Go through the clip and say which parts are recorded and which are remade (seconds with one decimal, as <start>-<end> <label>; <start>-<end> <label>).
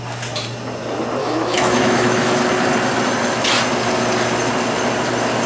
0.0-1.2 recorded; 1.2-2.4 remade; 2.4-5.5 recorded